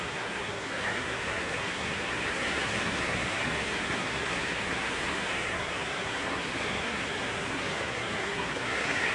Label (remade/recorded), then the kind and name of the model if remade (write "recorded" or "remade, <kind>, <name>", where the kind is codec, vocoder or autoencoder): remade, codec, SNAC